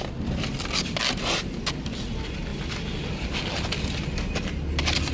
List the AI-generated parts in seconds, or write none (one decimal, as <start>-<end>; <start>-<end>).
none